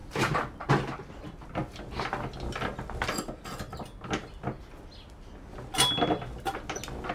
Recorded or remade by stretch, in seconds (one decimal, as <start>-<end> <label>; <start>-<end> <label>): 0.0-7.1 recorded